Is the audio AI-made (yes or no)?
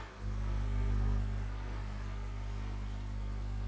yes